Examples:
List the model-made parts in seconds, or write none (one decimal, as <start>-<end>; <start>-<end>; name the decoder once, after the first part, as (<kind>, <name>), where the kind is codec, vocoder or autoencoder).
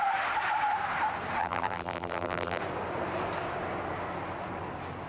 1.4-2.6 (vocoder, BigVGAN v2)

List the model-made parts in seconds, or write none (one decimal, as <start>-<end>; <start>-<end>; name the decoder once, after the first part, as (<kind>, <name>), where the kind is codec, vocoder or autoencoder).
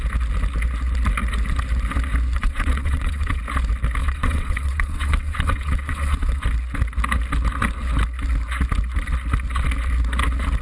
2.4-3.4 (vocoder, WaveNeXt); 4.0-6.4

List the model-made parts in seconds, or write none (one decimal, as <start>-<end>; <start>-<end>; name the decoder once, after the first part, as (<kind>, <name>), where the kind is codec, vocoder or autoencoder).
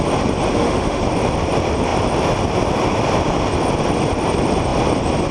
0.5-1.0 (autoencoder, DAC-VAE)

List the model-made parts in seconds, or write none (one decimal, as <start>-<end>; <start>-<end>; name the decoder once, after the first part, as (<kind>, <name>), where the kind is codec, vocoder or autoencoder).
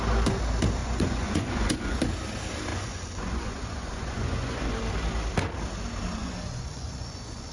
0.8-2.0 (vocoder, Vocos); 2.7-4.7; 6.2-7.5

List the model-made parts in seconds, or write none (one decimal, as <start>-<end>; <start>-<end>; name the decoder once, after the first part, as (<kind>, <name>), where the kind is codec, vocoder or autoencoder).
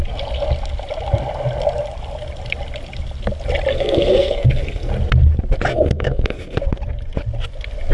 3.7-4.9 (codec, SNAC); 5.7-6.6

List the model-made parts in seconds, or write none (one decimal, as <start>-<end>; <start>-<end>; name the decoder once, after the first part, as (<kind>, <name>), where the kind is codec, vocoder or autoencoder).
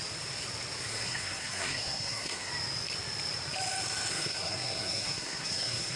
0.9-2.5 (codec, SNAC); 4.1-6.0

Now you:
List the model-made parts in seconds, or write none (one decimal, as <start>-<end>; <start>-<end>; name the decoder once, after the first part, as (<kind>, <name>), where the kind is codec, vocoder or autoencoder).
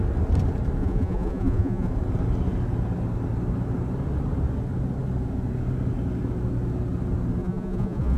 0.8-1.9 (vocoder, Vocos); 7.4-8.2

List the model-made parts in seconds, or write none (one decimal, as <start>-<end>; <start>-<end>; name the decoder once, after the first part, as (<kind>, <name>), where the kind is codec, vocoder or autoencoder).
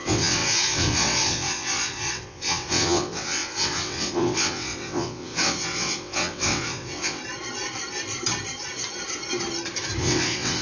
0.0-7.2 (vocoder, WaveNeXt); 10.0-10.6